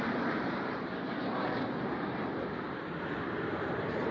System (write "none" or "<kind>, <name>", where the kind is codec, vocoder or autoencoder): vocoder, BigVGAN v2